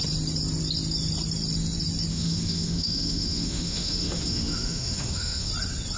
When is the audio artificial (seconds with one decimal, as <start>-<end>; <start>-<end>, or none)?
2.1-5.5